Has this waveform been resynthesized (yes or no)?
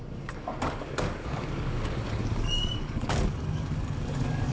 yes